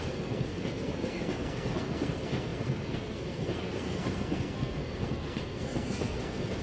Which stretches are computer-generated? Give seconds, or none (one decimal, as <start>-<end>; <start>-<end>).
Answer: 0.0-6.6